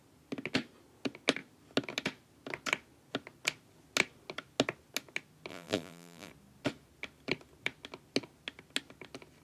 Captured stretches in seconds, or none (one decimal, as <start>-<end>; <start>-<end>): 0.0-5.5; 6.3-9.4